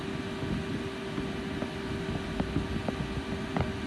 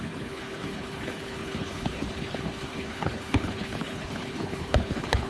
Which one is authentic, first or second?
first